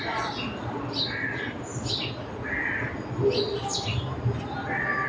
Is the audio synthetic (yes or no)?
no